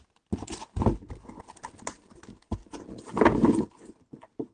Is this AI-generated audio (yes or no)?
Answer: no